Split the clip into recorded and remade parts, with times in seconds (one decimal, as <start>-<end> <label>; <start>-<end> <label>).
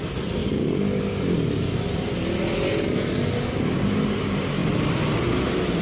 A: 0.0-5.8 recorded